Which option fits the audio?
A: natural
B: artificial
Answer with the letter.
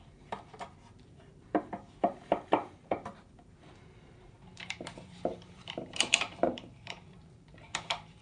B